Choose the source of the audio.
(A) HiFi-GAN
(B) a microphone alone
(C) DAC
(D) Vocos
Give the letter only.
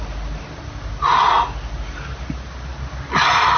B